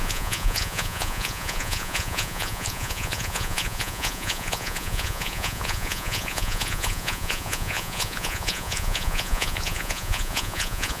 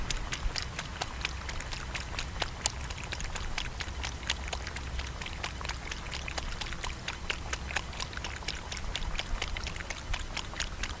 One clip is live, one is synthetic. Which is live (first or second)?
second